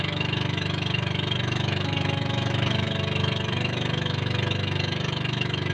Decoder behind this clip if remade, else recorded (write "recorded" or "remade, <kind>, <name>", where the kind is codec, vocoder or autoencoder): remade, autoencoder, DAC-VAE